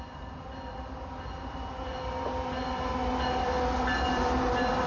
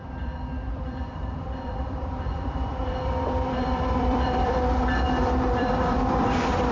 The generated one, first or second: second